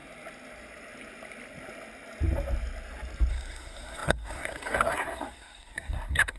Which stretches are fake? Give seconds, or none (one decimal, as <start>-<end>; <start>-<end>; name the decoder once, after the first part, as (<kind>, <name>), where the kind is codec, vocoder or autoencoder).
3.3-6.4 (codec, SNAC)